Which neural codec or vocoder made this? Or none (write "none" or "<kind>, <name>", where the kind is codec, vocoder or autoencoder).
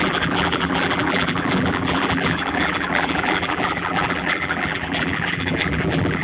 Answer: vocoder, BigVGAN v2